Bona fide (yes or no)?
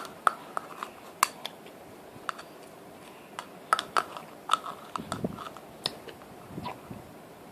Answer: yes